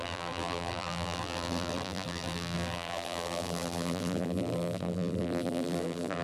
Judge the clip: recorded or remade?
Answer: remade